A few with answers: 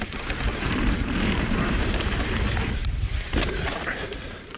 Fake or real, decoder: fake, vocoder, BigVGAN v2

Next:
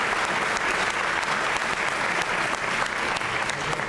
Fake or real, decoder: real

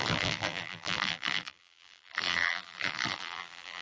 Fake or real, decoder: fake, vocoder, BigVGAN v2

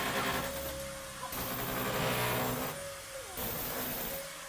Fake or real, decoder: real